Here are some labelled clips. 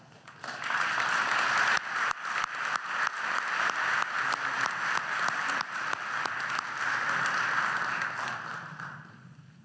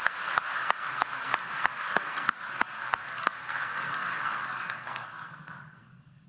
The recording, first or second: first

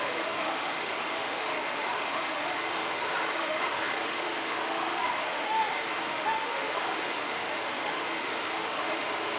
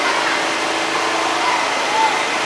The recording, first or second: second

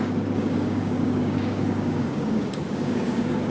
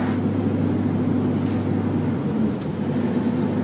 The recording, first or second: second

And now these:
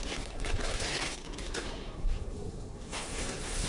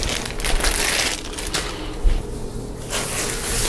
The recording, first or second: second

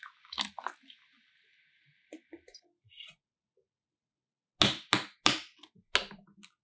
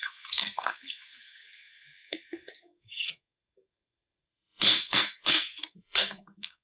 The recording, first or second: first